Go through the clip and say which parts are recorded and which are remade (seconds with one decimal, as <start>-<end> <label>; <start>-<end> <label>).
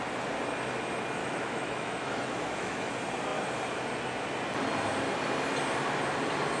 0.0-1.2 recorded; 1.2-2.9 remade; 2.9-6.6 recorded